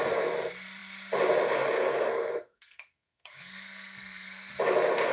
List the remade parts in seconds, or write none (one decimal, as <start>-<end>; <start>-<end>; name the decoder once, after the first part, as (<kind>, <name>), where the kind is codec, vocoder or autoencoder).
1.9-4.5 (codec, SNAC)